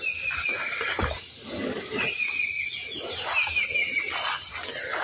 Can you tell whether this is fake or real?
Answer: real